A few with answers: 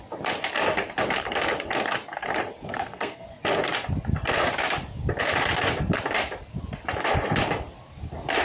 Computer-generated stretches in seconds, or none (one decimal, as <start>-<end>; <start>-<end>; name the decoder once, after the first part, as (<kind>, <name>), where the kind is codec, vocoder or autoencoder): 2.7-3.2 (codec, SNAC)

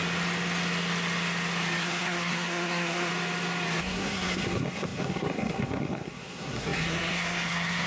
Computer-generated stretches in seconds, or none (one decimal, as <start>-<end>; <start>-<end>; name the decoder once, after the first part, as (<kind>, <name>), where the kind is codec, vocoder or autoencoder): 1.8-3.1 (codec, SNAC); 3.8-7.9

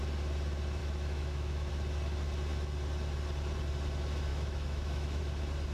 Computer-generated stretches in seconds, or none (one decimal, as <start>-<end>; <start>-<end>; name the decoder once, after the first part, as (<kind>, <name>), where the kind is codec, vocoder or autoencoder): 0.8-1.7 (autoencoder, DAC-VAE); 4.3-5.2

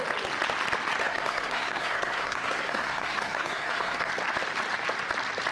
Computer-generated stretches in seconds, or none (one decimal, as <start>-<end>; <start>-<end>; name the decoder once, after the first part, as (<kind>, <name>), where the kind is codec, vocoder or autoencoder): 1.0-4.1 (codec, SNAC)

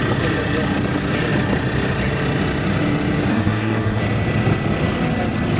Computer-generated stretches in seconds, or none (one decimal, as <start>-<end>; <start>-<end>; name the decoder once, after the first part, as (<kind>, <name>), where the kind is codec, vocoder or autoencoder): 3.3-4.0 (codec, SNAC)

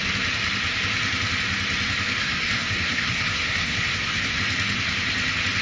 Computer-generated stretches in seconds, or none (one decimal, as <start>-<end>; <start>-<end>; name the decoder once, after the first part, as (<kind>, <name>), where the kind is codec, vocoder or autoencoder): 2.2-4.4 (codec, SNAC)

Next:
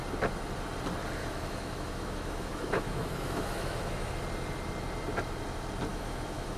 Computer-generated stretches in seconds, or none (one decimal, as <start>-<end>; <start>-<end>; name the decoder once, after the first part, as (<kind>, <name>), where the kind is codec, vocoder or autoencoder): 1.2-4.1 (autoencoder, DAC-VAE); 5.9-6.6

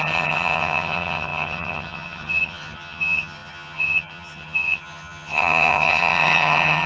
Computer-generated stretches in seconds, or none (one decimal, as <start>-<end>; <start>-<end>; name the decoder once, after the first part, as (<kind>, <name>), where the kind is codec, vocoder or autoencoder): 0.0-6.9 (vocoder, HiFi-GAN)